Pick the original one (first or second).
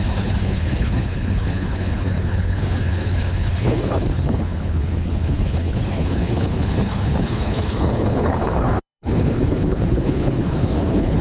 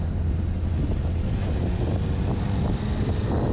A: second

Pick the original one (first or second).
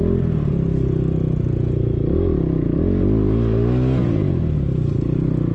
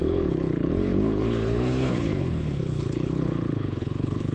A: first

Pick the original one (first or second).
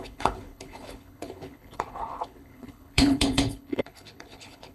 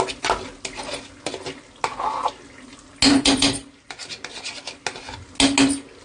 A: second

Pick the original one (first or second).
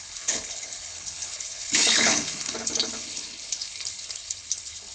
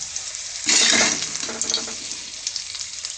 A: second